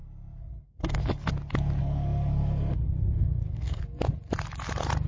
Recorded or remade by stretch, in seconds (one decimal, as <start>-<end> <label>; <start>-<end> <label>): 0.0-1.3 remade; 1.3-1.8 recorded; 1.8-3.8 remade; 3.8-5.1 recorded